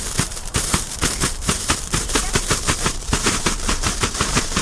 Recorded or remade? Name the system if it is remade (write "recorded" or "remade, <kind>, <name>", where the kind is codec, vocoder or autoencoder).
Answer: remade, vocoder, BigVGAN v2